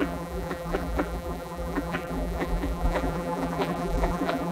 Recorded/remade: remade